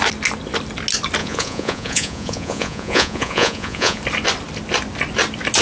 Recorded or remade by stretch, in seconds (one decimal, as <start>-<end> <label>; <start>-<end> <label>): 0.0-1.2 recorded; 1.2-4.0 remade; 4.0-5.6 recorded

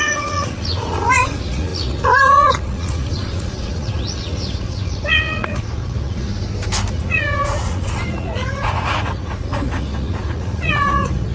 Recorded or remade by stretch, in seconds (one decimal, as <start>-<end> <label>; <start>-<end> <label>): 0.0-6.3 remade; 6.3-6.9 recorded; 6.9-11.3 remade